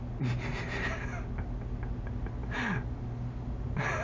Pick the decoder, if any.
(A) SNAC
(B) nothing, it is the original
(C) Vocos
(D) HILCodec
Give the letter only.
B